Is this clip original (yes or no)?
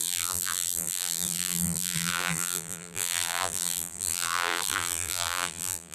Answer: no